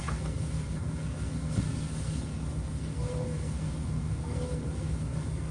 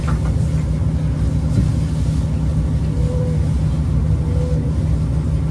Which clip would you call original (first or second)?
second